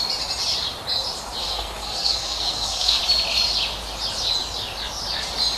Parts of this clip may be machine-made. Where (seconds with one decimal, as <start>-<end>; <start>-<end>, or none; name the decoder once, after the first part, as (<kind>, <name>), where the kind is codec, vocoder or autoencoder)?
1.4-3.0 (codec, SNAC)